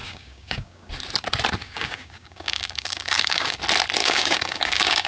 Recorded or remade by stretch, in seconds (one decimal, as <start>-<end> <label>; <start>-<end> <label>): 0.0-0.9 remade; 0.9-1.6 recorded; 1.6-3.6 remade; 3.6-4.0 recorded; 4.0-5.1 remade